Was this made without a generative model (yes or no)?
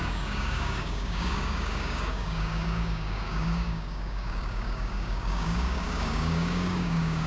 no